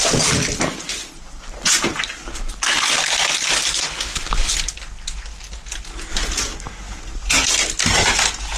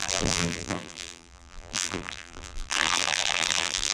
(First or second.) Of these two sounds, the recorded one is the first